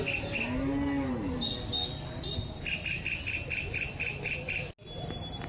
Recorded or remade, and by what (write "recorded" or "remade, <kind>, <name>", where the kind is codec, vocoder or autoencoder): recorded